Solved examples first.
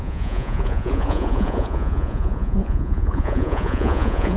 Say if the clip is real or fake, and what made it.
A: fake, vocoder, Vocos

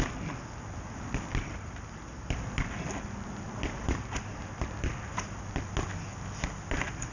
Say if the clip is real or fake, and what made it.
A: real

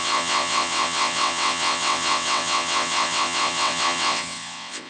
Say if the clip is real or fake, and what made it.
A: fake, vocoder, WaveNeXt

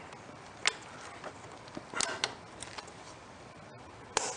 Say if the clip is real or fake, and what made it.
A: real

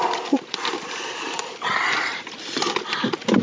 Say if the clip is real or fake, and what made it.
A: fake, vocoder, BigVGAN v2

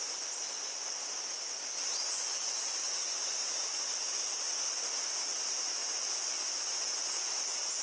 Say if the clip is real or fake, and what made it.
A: real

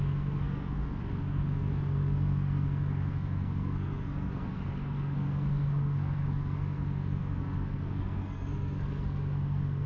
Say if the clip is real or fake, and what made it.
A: fake, codec, SNAC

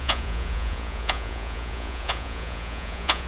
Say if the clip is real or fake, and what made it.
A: fake, vocoder, Vocos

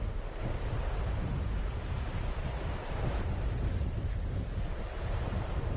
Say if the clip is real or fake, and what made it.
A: fake, vocoder, BigVGAN v2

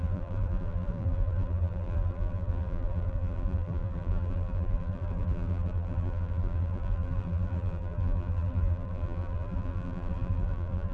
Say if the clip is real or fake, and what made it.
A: fake, vocoder, BigVGAN v2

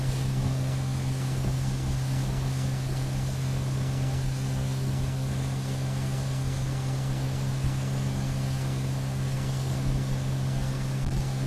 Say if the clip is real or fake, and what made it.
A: fake, codec, SNAC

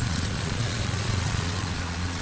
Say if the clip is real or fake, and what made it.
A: fake, vocoder, Vocos